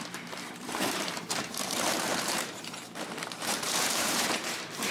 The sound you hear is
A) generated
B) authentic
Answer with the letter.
A